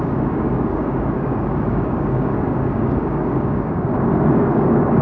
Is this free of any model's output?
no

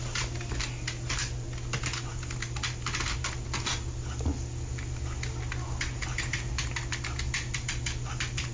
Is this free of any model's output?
yes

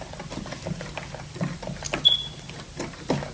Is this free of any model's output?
yes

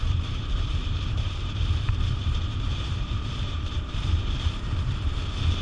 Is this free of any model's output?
no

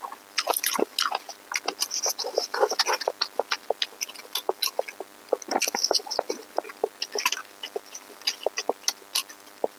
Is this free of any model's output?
yes